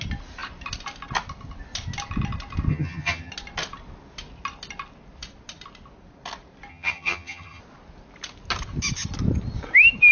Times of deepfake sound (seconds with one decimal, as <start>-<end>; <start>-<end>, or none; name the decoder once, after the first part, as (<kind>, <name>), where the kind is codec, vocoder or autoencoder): 2.7-3.3 (vocoder, HiFi-GAN); 6.7-7.6